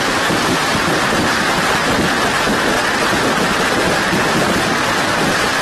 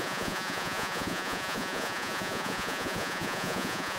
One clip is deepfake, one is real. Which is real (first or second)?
first